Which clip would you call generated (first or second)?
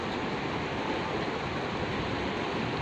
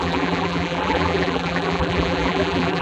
second